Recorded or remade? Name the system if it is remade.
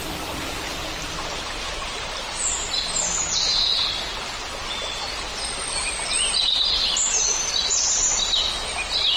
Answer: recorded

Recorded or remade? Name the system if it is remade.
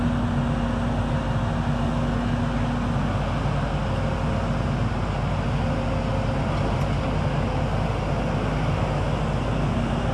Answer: recorded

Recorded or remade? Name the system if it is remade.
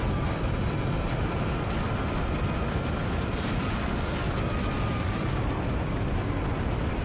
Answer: recorded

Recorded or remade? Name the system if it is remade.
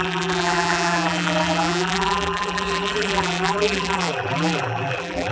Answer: remade, vocoder, BigVGAN v2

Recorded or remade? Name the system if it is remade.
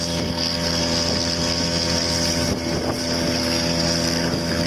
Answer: recorded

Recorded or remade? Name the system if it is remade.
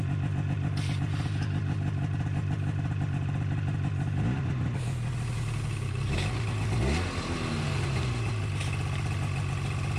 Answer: recorded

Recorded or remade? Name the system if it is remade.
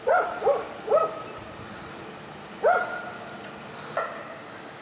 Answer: recorded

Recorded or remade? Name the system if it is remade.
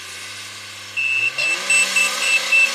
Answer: recorded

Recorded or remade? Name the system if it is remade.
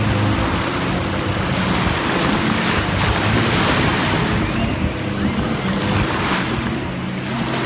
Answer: recorded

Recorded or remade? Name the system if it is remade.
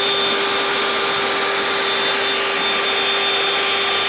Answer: recorded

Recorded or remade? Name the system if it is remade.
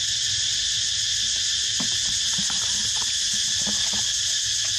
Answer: remade, vocoder, BigVGAN v2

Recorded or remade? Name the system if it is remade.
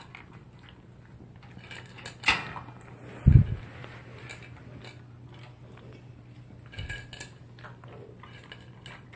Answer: recorded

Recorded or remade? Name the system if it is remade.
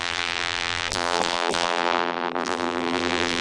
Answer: remade, vocoder, BigVGAN v2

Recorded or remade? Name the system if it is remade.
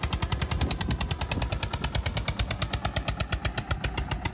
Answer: recorded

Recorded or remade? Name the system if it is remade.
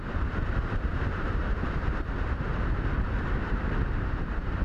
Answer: remade, vocoder, BigVGAN v2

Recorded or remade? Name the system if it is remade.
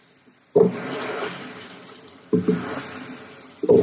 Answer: remade, vocoder, BigVGAN v2